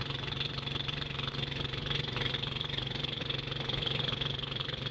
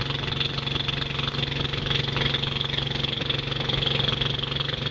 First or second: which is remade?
first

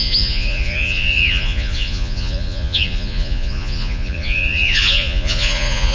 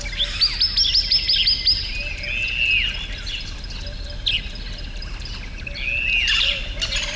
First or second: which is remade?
first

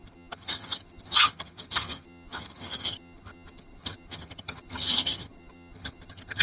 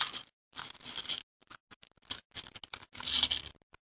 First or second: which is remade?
first